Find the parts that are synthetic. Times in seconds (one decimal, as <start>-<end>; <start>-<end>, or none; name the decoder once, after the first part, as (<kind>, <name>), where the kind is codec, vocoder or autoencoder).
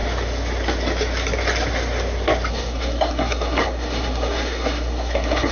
2.5-5.5 (codec, SNAC)